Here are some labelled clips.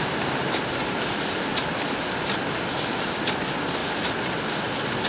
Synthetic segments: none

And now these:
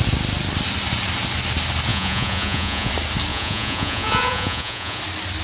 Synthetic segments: 1.9-2.9 (vocoder, Vocos); 3.3-5.0

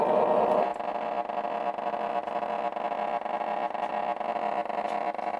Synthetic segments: none

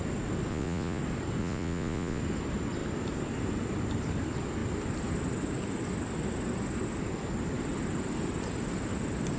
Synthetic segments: 0.5-1.0 (vocoder, Vocos); 1.4-2.2

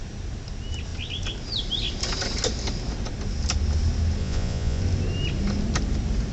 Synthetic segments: 4.2-4.8 (vocoder, Vocos)

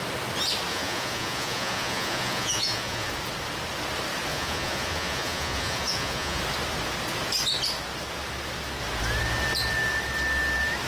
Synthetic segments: 0.7-3.1 (vocoder, Vocos); 4.3-6.4